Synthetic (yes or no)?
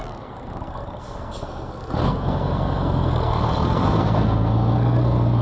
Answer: yes